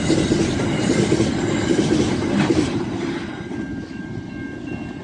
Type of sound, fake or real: real